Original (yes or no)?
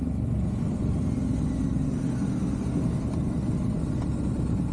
yes